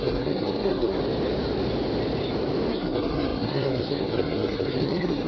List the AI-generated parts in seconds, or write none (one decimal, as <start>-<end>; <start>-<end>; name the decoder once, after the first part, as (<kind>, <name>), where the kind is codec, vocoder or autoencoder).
0.0-1.0 (codec, SNAC); 2.7-5.3